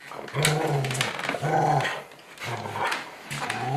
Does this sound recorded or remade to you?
recorded